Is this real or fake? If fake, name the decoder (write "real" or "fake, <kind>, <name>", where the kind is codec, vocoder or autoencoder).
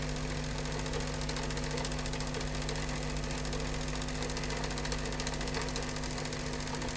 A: real